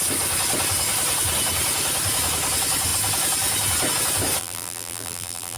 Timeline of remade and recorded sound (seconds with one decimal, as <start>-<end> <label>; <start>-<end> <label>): 0.0-4.4 recorded; 4.4-5.6 remade